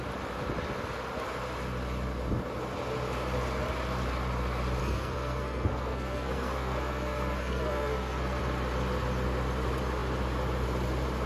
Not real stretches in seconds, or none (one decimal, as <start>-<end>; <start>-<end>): 4.8-8.4